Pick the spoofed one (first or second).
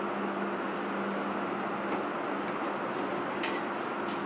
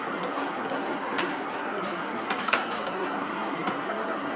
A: second